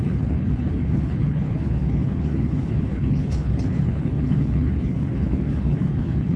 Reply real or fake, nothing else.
fake